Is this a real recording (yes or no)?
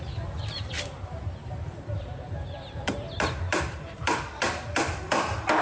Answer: no